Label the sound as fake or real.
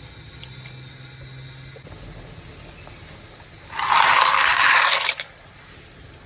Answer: real